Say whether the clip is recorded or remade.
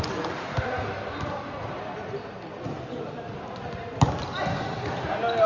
recorded